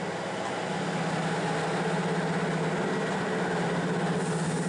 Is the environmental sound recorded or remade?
recorded